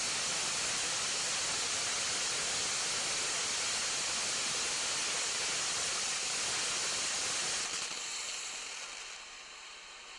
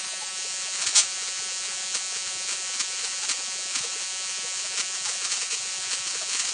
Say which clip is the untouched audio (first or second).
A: first